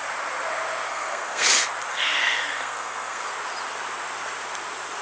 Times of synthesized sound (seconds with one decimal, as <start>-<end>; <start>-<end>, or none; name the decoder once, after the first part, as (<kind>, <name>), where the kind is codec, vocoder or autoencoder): 0.9-1.5 (codec, SNAC); 1.9-3.3